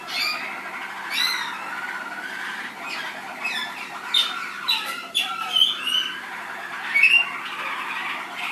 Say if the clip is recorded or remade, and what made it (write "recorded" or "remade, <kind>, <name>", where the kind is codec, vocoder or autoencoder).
recorded